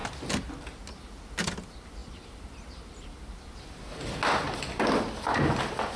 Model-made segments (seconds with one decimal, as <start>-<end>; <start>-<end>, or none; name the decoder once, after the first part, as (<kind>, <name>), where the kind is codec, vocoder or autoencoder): none